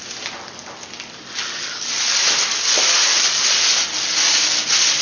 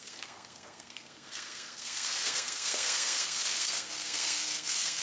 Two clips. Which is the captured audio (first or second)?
first